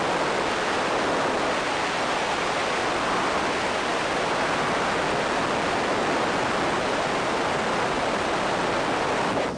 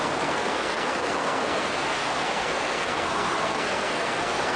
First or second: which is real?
first